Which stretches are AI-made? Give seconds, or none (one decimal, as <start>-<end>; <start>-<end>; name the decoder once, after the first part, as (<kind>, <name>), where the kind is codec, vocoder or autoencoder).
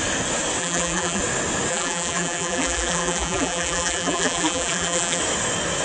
0.6-1.2 (vocoder, BigVGAN v2); 1.7-5.2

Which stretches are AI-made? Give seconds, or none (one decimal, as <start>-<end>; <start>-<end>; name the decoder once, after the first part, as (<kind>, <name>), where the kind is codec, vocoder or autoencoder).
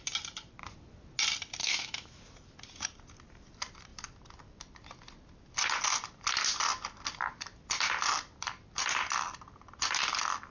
1.6-2.2 (autoencoder, DAC-VAE)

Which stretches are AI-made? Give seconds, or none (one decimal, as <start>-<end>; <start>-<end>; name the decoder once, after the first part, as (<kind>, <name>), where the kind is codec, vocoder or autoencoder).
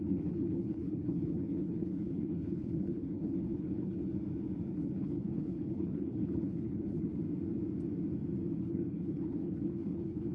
0.0-4.1 (codec, HILCodec); 4.7-7.1; 8.6-10.3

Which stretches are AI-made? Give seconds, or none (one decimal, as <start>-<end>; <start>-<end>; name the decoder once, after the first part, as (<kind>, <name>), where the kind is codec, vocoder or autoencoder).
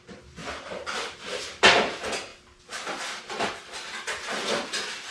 0.4-1.9 (vocoder, BigVGAN v2)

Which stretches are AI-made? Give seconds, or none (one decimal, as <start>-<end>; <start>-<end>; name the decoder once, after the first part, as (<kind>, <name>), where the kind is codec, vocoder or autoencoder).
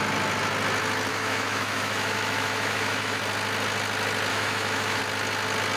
1.1-3.2 (autoencoder, DAC-VAE); 4.3-5.0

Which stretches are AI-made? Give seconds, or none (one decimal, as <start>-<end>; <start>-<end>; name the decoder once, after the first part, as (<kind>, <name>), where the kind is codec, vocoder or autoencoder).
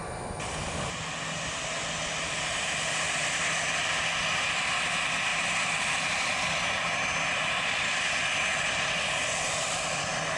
none